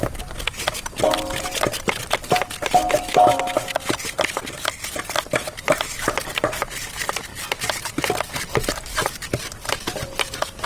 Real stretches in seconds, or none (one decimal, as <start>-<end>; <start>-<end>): 0.0-10.7